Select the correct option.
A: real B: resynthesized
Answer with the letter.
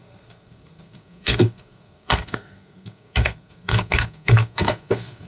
B